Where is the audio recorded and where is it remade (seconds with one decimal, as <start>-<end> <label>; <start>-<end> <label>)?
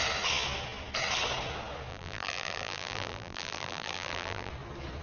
0.0-1.9 recorded; 1.9-4.5 remade; 4.5-5.0 recorded